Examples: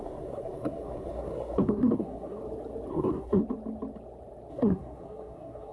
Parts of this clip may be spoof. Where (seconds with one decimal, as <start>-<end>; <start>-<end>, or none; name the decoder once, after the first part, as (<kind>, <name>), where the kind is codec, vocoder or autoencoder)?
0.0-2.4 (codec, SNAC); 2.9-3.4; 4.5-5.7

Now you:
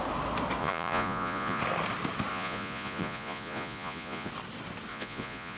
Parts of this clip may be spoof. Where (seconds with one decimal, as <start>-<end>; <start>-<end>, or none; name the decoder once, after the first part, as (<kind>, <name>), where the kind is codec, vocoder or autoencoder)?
0.6-1.6 (vocoder, Vocos); 2.3-4.3; 4.9-5.6

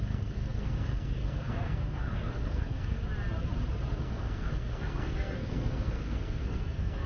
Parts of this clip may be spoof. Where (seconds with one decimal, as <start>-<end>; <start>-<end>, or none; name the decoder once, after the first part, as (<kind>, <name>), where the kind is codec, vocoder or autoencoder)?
0.0-3.0 (codec, SNAC); 4.0-7.1

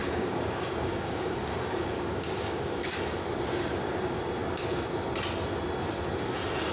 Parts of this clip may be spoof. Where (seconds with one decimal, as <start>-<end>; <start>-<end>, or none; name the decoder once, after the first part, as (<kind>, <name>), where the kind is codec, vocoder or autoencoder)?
0.0-3.0 (codec, DAC)

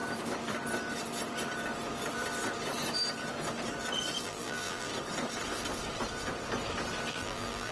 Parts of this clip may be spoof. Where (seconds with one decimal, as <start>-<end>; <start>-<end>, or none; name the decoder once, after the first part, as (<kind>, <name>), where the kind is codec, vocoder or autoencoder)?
4.2-4.9 (vocoder, BigVGAN v2); 7.1-7.7

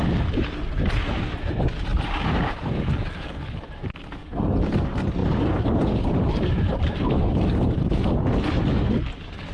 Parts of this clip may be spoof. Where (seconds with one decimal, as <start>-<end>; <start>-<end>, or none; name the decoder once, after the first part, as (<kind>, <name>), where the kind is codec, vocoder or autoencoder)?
1.9-2.9 (vocoder, BigVGAN v2); 5.2-8.4

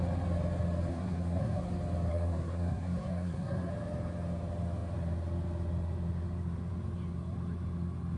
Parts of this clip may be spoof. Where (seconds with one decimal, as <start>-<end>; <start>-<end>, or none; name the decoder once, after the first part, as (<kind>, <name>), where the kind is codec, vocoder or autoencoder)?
0.9-1.6 (codec, SNAC); 2.1-3.7

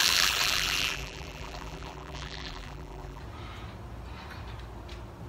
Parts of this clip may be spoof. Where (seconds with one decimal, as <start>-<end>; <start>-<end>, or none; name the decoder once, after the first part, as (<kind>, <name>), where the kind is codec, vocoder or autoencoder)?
0.0-3.2 (vocoder, BigVGAN v2)